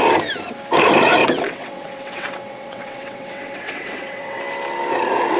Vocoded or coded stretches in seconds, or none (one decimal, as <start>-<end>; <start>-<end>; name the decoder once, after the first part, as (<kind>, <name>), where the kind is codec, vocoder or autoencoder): 1.2-4.4 (vocoder, WaveNeXt)